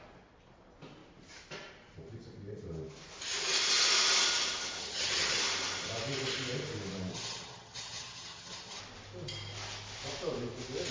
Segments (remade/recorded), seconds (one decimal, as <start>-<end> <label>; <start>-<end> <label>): 0.0-4.8 recorded; 4.8-5.4 remade; 5.4-7.1 recorded; 7.1-8.8 remade; 8.8-10.9 recorded